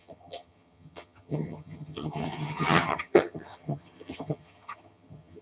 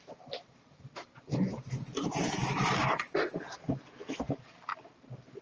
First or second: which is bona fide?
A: second